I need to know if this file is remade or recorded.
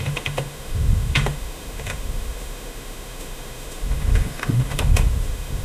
remade